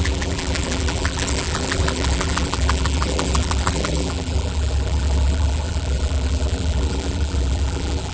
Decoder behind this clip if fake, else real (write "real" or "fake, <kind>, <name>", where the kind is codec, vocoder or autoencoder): fake, vocoder, BigVGAN v2